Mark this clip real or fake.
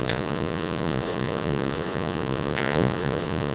fake